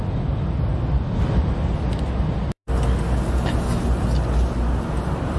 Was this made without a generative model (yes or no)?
yes